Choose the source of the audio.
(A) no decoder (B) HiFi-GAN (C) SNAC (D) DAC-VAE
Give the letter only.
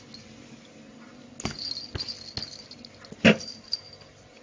A